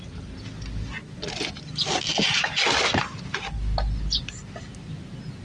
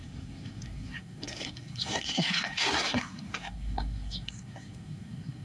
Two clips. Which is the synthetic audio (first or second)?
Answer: second